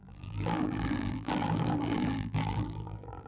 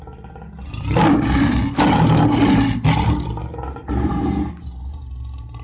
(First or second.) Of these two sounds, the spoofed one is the first